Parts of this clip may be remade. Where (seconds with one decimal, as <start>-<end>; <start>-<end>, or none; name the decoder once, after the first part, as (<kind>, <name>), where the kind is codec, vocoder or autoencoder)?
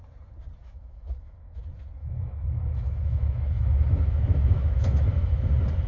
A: 0.6-1.6 (autoencoder, DAC-VAE); 2.0-5.5